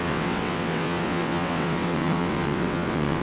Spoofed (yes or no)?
yes